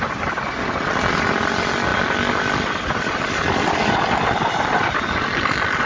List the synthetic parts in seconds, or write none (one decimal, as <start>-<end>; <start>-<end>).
none